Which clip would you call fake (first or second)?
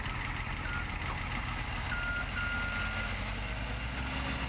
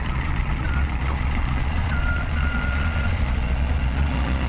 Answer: second